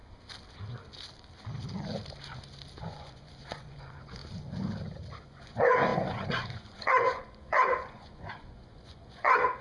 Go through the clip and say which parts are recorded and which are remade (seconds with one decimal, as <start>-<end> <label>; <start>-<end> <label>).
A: 0.0-2.8 recorded; 2.8-4.2 remade; 4.2-5.2 recorded; 5.2-9.6 remade